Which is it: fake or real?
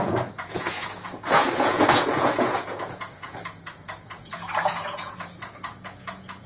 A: fake